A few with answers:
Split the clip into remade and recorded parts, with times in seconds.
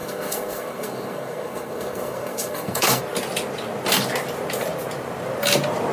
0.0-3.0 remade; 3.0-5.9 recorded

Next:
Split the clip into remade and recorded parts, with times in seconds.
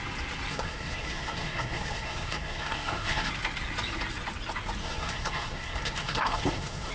0.0-0.5 recorded; 0.5-3.3 remade; 3.3-4.8 recorded; 4.8-6.9 remade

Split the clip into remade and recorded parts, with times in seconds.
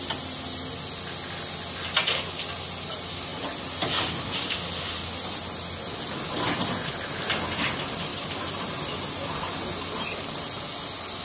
0.0-11.2 recorded